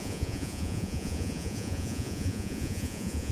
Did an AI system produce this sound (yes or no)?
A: yes